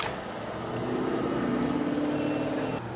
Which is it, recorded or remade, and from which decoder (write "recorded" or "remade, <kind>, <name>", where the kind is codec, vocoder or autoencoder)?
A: recorded